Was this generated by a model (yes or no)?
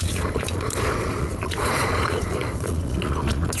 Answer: yes